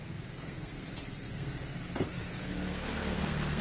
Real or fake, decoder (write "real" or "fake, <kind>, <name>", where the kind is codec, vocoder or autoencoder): fake, codec, SNAC